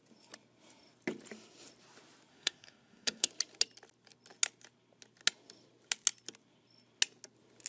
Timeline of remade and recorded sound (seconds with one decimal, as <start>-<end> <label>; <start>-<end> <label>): 0.0-2.3 recorded; 2.3-3.3 remade; 3.3-7.7 recorded